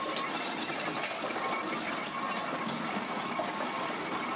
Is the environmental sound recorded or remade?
recorded